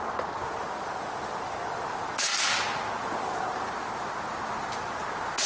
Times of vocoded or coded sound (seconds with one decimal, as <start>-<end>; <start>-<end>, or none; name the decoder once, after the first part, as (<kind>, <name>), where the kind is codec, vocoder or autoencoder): none